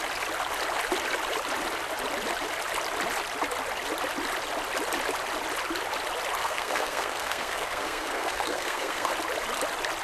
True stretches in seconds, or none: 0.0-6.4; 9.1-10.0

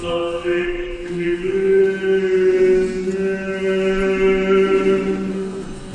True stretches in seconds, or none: 1.8-5.3